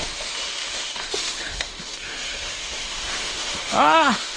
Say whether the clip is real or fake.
fake